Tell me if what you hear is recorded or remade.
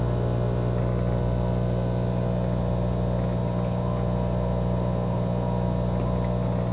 recorded